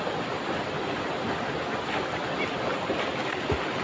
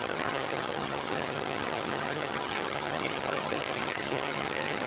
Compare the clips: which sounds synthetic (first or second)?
second